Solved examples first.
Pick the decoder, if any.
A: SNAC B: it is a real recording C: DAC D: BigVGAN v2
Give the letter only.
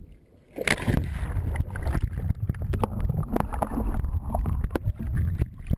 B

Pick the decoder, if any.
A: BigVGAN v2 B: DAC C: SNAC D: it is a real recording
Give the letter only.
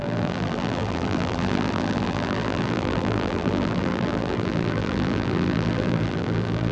A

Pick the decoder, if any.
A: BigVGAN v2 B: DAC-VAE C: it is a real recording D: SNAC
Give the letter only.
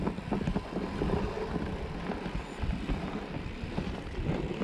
C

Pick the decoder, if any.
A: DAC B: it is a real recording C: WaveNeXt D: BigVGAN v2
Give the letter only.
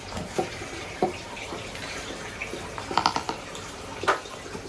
D